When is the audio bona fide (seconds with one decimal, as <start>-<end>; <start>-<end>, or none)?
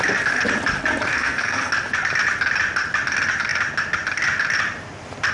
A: 0.0-1.1; 1.7-5.3